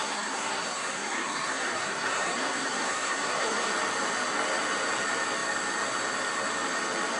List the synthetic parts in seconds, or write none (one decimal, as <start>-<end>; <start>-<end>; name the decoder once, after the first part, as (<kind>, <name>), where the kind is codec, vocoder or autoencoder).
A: 0.0-3.7 (codec, SNAC)